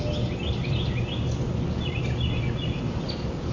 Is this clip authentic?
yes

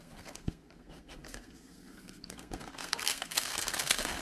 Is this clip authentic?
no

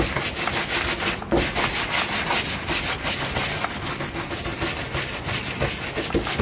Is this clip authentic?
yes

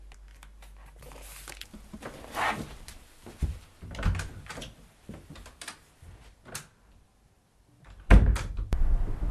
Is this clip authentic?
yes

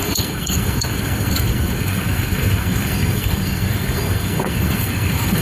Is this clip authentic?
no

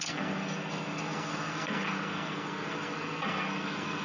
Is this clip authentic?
no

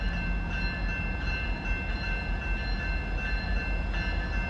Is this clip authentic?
yes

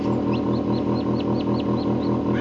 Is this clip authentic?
yes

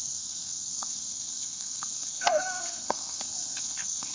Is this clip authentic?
no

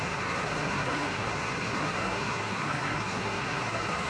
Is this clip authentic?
no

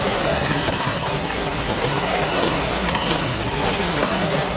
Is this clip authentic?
no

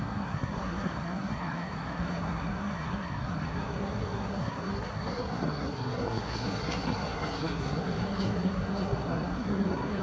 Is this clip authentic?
no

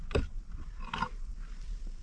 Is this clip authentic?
yes